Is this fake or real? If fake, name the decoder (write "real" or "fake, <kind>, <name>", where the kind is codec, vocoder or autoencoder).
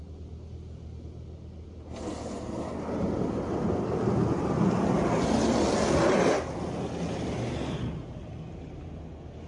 real